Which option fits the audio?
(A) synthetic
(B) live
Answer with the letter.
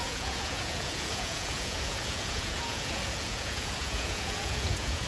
A